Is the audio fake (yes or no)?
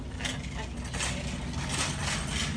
no